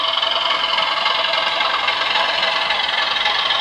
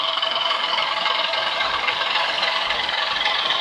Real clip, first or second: first